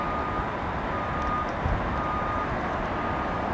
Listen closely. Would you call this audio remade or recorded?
recorded